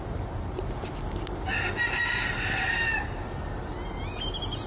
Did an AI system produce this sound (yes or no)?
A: no